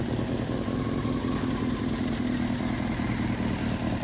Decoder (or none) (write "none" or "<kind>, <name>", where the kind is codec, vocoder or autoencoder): none